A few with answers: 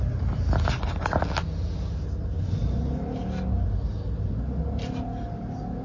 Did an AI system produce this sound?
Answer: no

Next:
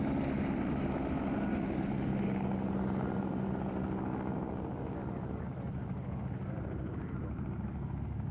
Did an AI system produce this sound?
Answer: no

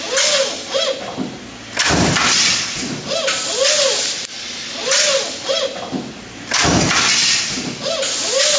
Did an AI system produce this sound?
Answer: no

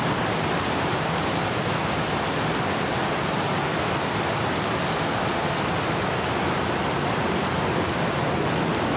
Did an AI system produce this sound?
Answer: no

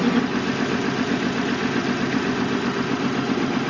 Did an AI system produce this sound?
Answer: no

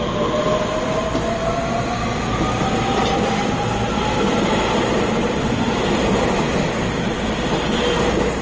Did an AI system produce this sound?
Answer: no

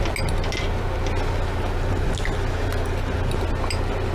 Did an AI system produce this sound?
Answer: no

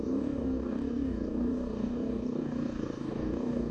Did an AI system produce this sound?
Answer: yes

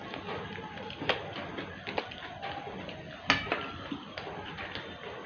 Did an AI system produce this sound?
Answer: no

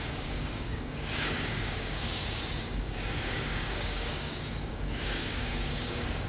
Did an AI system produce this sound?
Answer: yes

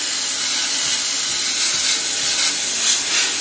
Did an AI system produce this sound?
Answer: no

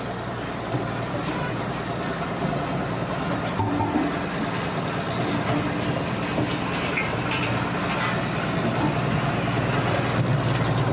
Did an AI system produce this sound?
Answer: no